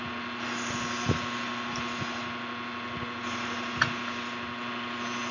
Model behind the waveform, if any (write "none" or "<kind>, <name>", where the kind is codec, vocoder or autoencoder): none